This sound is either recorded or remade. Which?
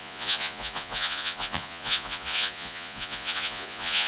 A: remade